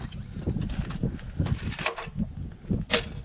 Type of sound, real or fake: real